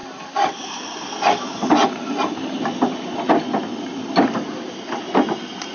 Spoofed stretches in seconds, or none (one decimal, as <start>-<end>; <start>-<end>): 0.0-0.8